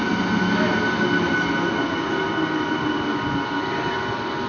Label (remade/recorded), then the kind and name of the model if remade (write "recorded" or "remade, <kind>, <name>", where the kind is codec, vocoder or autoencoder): recorded